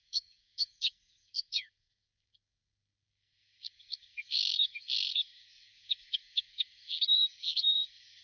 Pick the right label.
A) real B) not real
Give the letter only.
B